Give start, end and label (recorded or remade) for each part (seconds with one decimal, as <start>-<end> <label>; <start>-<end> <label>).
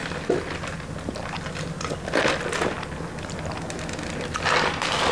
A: 0.0-5.1 recorded